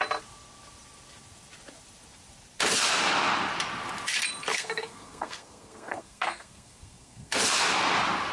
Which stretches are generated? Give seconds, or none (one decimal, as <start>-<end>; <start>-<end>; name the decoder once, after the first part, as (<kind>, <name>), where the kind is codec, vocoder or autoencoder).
4.5-7.4 (codec, SNAC)